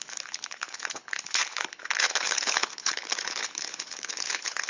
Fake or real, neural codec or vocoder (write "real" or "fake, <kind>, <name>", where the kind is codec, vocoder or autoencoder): fake, codec, HILCodec